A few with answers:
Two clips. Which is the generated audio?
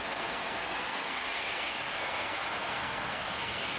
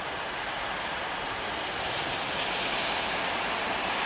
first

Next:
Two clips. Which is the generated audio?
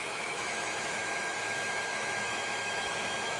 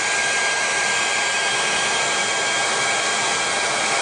first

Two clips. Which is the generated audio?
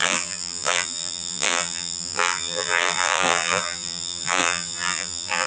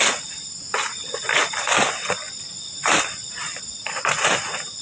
first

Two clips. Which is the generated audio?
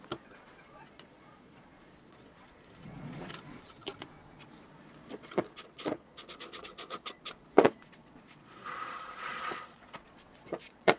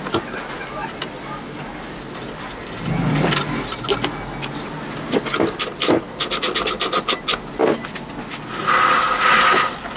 first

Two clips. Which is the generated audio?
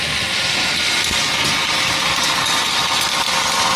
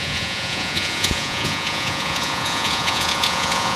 second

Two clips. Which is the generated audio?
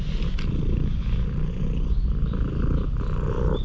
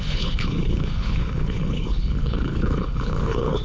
second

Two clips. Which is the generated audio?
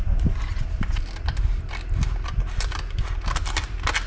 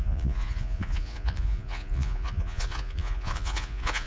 second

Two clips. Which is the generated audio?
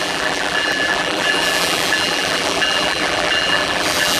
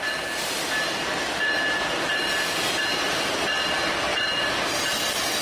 first